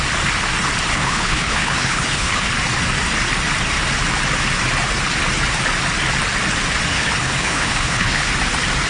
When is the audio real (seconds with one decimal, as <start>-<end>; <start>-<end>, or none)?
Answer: 0.0-0.9; 2.5-6.9; 8.3-8.9